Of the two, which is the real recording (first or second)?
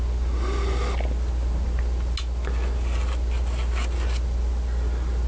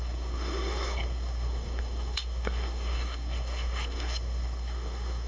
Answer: first